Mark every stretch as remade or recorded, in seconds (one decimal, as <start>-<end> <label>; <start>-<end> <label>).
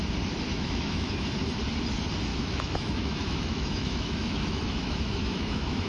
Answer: 0.0-0.5 recorded; 0.5-1.1 remade; 1.1-2.3 recorded; 2.3-5.9 remade